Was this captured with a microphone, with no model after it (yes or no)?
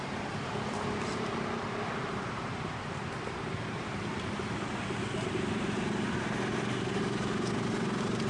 yes